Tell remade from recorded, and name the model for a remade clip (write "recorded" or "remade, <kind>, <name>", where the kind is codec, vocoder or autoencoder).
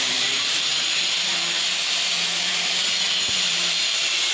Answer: remade, vocoder, BigVGAN v2